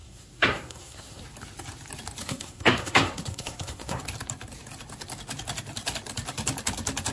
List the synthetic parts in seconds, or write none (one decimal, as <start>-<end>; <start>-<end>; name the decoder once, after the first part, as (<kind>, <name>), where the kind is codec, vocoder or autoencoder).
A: 0.0-1.2 (codec, SNAC); 2.2-4.0